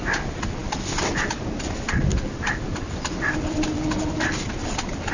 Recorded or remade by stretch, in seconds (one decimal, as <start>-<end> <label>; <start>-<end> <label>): 0.0-5.1 recorded